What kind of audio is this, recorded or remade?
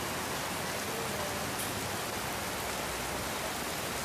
recorded